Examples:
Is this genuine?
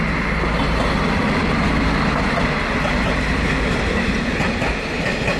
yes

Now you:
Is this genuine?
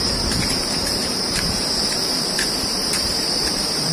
no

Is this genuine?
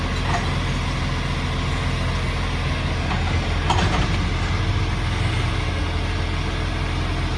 yes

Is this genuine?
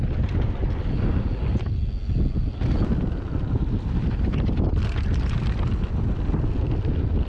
yes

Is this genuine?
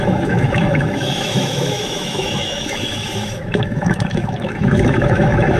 no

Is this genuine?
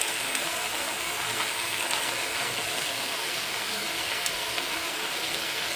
no